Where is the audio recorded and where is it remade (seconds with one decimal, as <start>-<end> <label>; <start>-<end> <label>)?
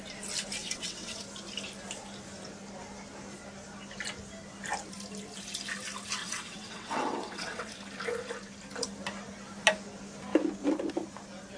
0.0-0.6 recorded; 0.6-1.2 remade; 1.2-6.2 recorded; 6.2-7.7 remade; 7.7-11.6 recorded